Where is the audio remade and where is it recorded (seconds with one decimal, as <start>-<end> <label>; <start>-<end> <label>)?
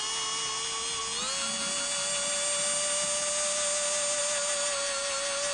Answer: 0.0-5.5 recorded